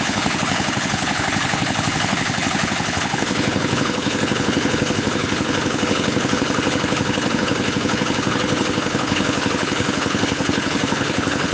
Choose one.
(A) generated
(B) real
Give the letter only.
A